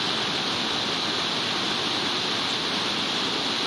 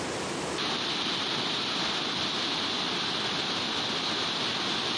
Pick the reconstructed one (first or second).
first